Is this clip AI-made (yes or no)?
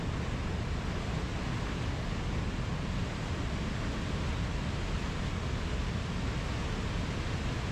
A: no